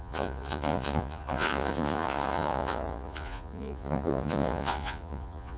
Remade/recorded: remade